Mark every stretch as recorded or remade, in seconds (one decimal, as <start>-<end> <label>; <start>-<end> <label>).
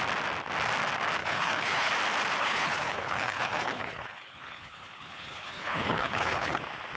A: 0.0-1.2 recorded; 1.2-1.9 remade; 1.9-2.4 recorded; 2.4-6.6 remade; 6.6-7.0 recorded